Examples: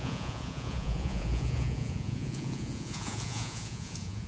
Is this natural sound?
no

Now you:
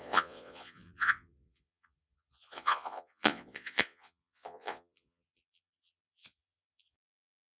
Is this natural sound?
no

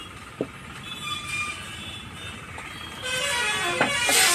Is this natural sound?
yes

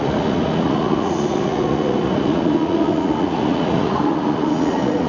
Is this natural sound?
no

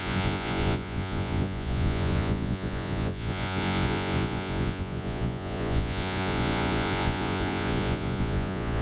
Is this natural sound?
no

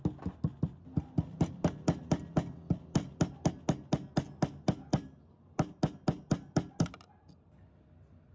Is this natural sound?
yes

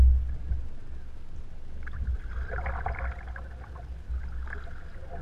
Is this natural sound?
yes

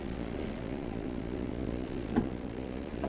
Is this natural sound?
no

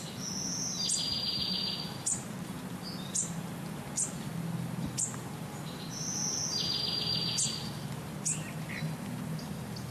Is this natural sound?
yes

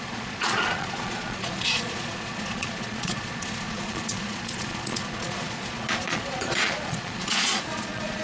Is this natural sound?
no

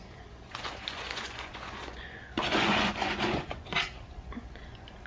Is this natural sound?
no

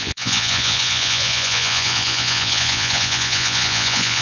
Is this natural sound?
no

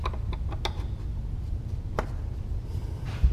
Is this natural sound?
yes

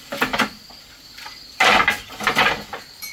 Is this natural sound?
yes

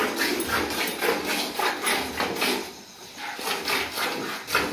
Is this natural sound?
yes